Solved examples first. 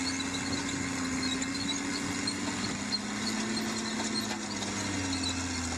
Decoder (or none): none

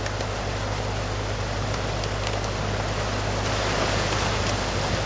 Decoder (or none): none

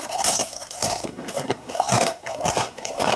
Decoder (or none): codec, SNAC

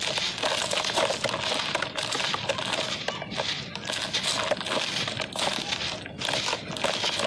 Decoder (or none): none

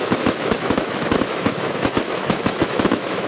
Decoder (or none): autoencoder, DAC-VAE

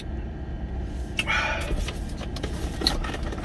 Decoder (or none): none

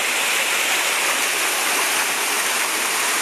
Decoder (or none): none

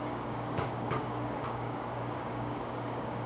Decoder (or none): codec, DAC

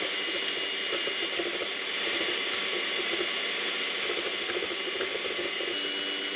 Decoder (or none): none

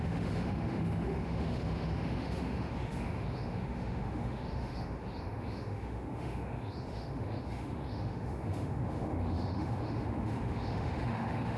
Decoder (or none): autoencoder, DAC-VAE